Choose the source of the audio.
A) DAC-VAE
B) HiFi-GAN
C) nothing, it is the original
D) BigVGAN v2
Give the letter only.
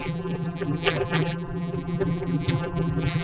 D